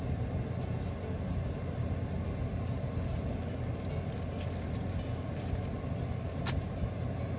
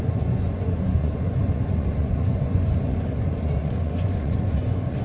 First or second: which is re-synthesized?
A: second